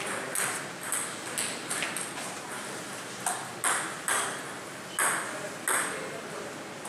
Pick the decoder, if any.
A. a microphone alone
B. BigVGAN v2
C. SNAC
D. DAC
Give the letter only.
A